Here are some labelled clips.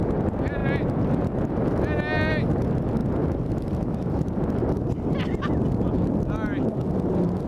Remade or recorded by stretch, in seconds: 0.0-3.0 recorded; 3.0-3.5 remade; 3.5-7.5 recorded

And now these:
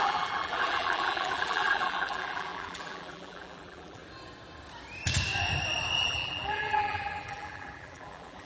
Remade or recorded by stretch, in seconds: 0.0-4.0 remade; 4.0-6.0 recorded; 6.0-8.5 remade

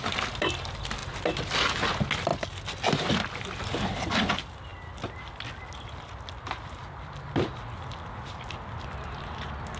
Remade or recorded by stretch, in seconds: 0.0-1.0 recorded; 1.0-1.9 remade; 1.9-9.8 recorded

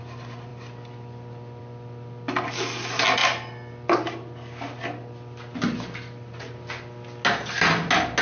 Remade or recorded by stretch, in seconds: 0.0-0.5 recorded; 0.5-1.6 remade; 1.6-3.2 recorded; 3.2-6.3 remade; 6.3-8.2 recorded